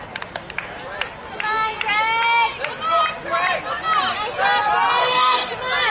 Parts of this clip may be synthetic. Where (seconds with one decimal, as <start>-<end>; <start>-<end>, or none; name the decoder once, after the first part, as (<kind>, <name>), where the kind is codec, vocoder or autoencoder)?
5.0-5.5 (codec, SNAC)